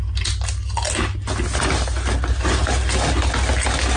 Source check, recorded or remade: recorded